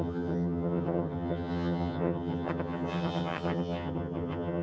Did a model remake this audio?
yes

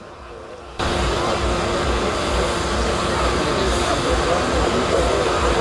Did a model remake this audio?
no